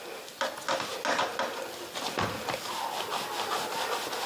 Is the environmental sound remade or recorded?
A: recorded